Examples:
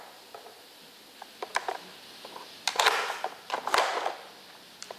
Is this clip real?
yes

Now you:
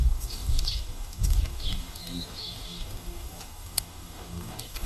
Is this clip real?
no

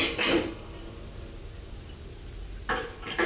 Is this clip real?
yes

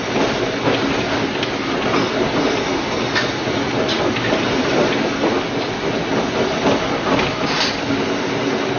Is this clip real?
yes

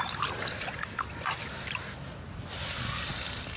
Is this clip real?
yes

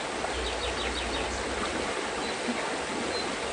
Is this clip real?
yes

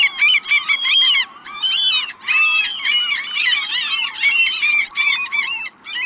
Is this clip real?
no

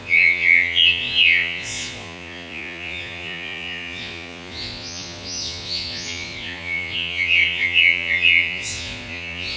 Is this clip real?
no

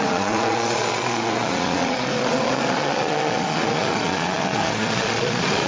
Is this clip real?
no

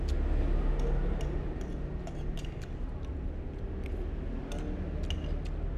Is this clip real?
yes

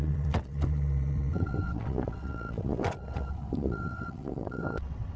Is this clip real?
no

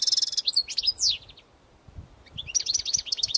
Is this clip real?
yes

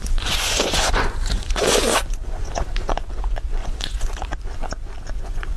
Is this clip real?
no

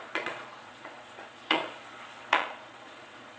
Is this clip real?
no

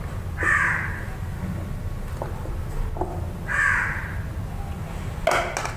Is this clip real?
yes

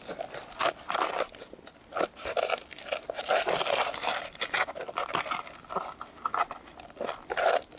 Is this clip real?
yes